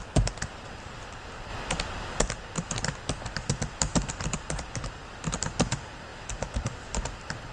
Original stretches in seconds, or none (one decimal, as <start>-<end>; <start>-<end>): 0.0-3.9; 5.2-6.1; 7.0-7.5